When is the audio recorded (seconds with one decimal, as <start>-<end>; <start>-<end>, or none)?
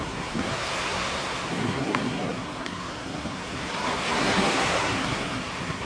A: none